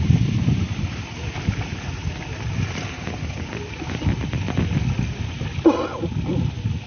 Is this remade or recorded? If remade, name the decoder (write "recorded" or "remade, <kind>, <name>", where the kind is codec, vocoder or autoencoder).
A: recorded